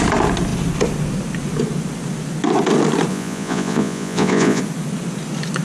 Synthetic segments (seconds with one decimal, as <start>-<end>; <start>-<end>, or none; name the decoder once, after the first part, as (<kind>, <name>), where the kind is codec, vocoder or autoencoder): 3.1-4.6 (vocoder, Vocos)